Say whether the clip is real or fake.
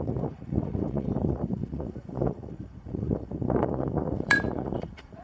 fake